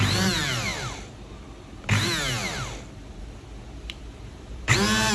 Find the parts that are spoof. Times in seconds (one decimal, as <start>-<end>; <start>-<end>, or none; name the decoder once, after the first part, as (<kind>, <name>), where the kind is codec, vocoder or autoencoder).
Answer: 0.0-0.7 (vocoder, BigVGAN v2); 3.8-5.1